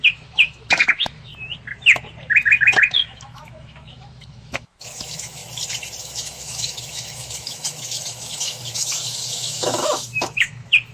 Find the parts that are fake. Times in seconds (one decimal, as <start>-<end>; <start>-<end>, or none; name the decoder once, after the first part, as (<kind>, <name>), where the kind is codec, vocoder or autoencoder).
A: 0.0-1.3 (autoencoder, DAC-VAE); 2.9-5.4; 6.0-10.9